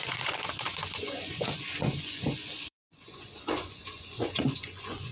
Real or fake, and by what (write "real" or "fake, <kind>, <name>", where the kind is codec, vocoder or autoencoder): fake, vocoder, Vocos